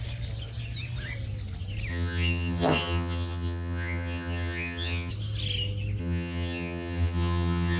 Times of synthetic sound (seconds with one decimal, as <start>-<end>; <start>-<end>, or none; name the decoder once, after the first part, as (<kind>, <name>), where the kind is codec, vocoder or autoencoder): 1.9-5.1 (vocoder, HiFi-GAN); 6.0-7.8